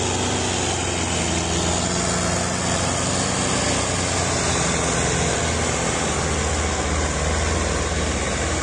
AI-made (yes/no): no